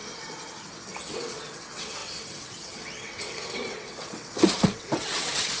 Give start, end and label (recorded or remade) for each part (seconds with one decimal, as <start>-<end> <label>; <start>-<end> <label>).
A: 0.0-1.0 recorded; 1.0-5.6 remade